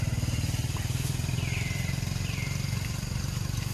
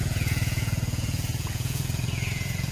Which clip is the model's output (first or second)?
second